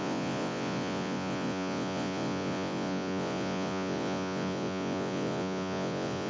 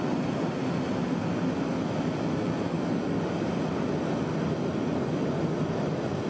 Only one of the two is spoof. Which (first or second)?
first